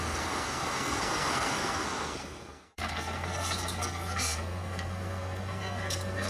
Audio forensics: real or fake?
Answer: fake